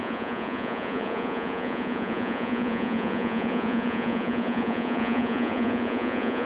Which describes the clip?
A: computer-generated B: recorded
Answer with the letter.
A